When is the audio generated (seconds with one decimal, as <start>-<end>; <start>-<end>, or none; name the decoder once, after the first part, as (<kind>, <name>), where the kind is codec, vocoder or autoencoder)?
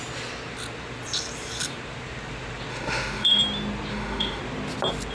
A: 2.7-3.4 (autoencoder, DAC-VAE); 3.9-4.4